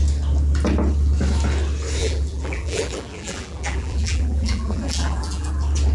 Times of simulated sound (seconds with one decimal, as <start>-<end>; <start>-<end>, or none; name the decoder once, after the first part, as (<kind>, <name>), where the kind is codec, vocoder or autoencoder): 2.0-5.5 (vocoder, BigVGAN v2)

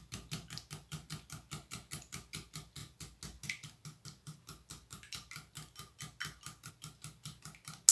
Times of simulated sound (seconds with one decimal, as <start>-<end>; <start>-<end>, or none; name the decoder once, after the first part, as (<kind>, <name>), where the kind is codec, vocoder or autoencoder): none